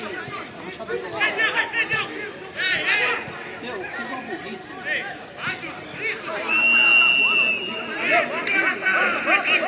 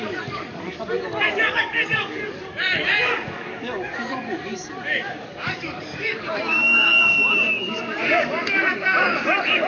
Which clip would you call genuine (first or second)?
first